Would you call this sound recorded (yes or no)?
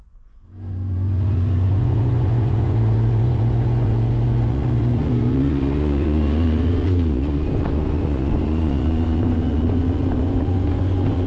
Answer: no